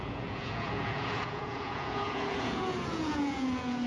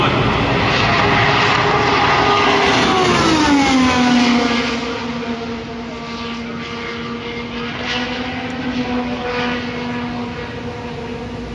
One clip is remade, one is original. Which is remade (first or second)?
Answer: first